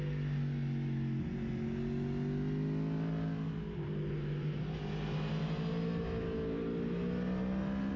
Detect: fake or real real